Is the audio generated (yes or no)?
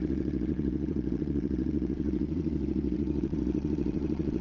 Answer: yes